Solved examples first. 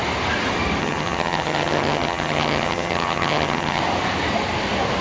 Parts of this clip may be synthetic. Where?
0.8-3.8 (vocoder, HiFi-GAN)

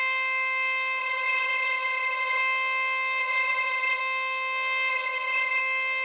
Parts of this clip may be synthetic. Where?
1.0-2.4 (vocoder, HiFi-GAN); 3.2-4.0; 4.9-5.6

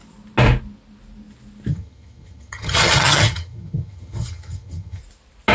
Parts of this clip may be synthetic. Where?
1.7-5.0 (vocoder, HiFi-GAN)

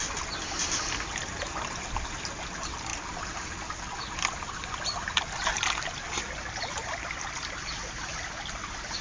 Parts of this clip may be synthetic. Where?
none

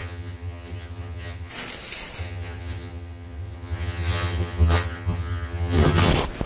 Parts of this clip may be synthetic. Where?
0.0-1.5 (vocoder, HiFi-GAN); 2.2-6.1

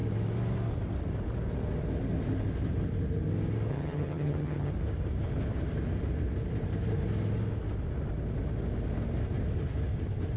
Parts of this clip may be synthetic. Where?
3.7-4.7 (vocoder, HiFi-GAN)

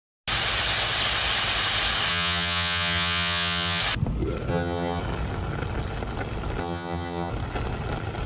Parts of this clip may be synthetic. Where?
2.1-3.8 (vocoder, HiFi-GAN); 4.5-5.0; 6.6-7.3